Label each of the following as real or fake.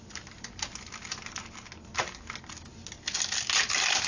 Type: real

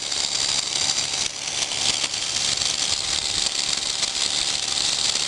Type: real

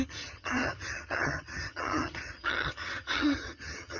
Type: fake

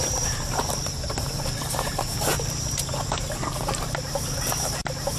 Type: fake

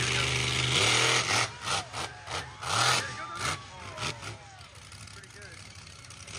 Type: real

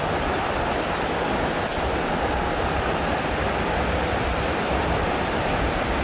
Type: real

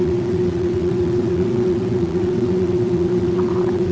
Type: fake